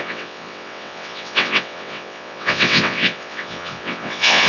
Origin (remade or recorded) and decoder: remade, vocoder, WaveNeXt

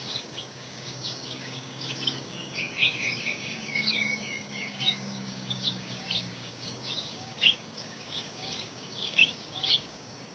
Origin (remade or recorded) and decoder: remade, codec, DAC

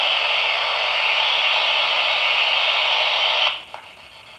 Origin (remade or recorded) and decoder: recorded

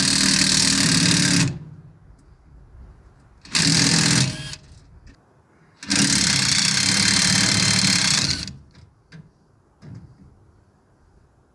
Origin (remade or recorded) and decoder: recorded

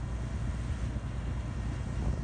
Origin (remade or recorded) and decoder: recorded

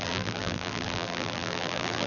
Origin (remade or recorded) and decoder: remade, vocoder, BigVGAN v2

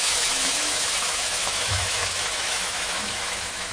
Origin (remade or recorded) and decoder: remade, autoencoder, DAC-VAE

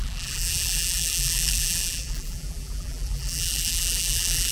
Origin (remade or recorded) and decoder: remade, vocoder, BigVGAN v2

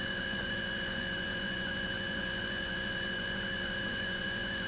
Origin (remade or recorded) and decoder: remade, vocoder, Vocos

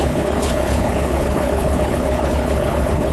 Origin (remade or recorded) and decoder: remade, codec, HILCodec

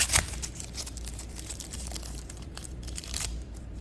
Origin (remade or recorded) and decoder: remade, vocoder, BigVGAN v2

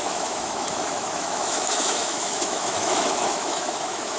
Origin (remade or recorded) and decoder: remade, autoencoder, DAC-VAE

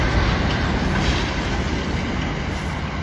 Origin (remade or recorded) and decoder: recorded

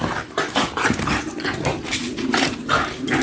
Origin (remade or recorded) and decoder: recorded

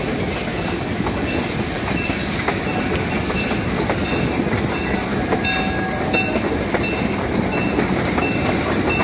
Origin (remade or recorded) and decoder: recorded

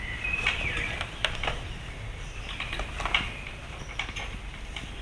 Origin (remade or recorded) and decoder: recorded